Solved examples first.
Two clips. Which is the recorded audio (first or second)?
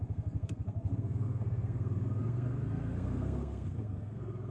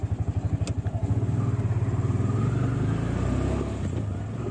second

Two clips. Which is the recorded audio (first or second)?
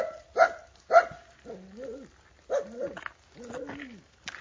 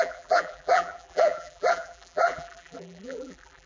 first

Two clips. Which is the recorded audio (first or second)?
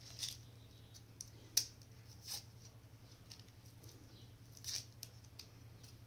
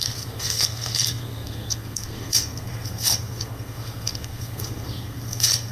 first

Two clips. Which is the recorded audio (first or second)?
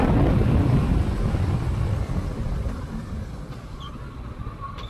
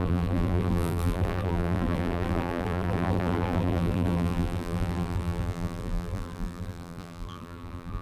first